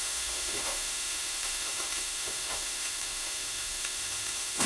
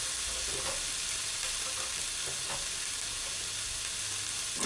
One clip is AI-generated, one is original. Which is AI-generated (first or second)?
first